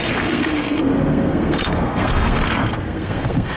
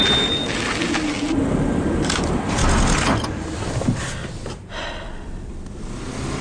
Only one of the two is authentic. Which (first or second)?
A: second